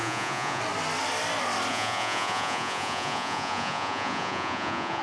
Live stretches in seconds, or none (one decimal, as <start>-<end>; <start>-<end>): 0.6-1.7